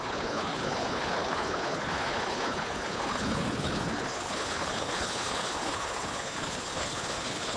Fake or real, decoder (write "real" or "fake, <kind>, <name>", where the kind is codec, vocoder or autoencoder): fake, codec, HILCodec